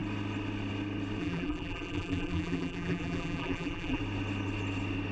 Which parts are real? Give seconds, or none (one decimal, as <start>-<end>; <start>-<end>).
0.0-1.2; 4.0-5.1